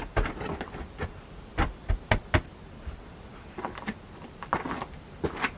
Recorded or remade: recorded